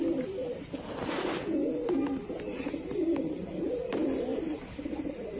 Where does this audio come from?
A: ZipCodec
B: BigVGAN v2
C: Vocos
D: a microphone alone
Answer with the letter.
B